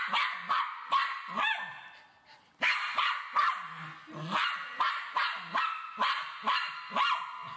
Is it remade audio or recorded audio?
recorded